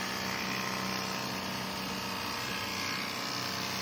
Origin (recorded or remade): recorded